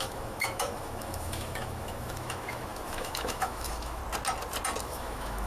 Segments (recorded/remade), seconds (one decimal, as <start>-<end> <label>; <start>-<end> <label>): 0.0-4.0 remade; 4.0-4.8 recorded; 4.8-5.5 remade